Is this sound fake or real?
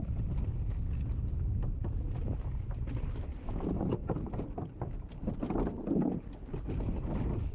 real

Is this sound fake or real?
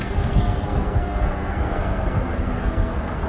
fake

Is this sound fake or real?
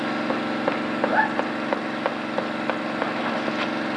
real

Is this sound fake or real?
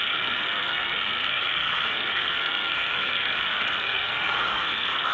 fake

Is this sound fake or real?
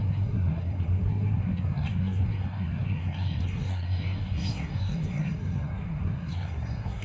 fake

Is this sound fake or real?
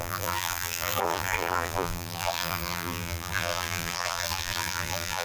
fake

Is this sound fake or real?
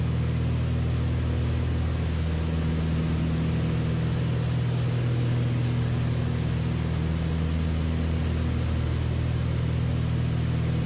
real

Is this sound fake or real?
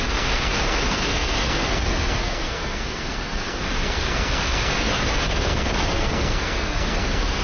fake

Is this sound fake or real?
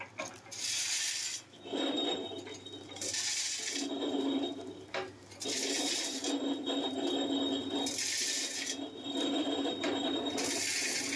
real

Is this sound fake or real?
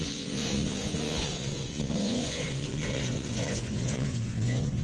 fake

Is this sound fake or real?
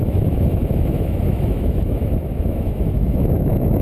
fake